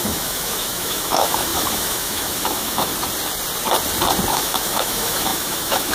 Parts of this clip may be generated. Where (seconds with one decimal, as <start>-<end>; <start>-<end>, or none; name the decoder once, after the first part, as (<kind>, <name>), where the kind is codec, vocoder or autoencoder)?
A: 0.0-2.9 (autoencoder, DAC-VAE); 4.3-5.9